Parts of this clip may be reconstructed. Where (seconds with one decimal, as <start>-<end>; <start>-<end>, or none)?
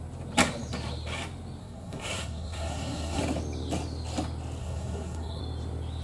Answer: 1.6-3.2; 4.6-5.4